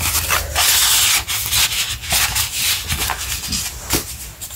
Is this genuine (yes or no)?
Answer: yes